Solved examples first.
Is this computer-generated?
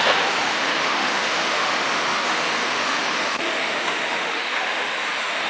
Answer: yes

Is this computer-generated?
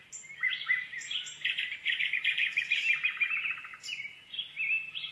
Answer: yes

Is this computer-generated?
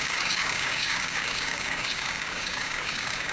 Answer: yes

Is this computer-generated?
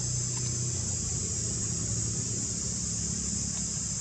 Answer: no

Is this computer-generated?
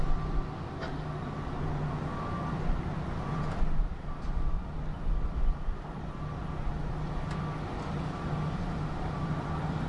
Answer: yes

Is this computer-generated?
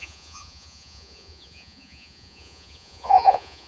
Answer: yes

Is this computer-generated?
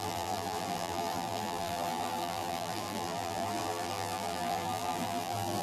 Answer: yes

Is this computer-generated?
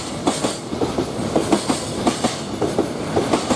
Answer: no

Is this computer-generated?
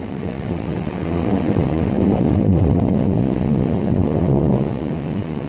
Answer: yes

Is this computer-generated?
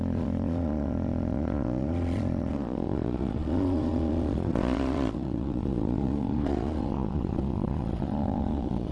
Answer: yes